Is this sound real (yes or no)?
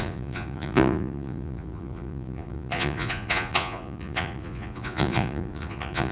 no